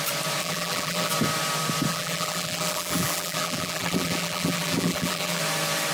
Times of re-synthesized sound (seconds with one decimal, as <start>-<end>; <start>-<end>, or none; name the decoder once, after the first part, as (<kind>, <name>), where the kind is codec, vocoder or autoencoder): 0.4-1.1 (vocoder, BigVGAN v2); 1.9-5.4